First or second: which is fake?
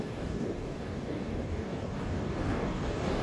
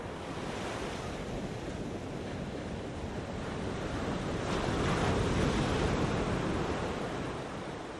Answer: first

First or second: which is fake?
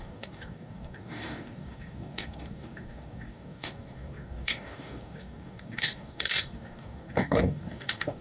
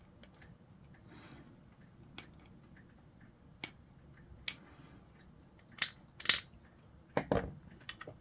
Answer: first